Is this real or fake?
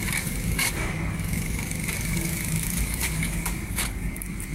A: fake